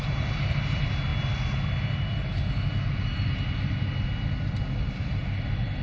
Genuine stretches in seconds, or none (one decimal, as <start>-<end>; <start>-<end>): 0.0-5.8